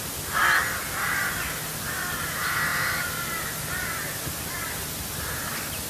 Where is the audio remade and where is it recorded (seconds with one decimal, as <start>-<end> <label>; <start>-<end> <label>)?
0.0-5.9 recorded